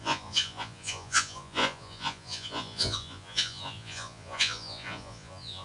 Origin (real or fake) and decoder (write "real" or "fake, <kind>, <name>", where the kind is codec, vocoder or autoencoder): fake, vocoder, Vocos